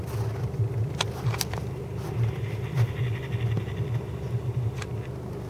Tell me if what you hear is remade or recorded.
recorded